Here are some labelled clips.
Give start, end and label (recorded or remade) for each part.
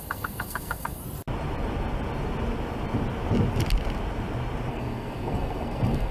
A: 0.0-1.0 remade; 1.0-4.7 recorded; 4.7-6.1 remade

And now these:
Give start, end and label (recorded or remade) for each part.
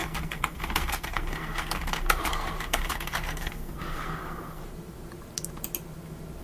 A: 0.0-4.6 remade; 4.6-6.4 recorded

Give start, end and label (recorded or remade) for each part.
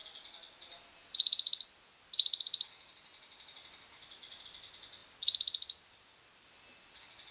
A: 0.0-7.3 recorded